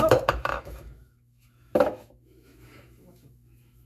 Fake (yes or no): yes